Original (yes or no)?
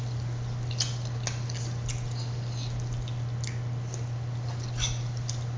yes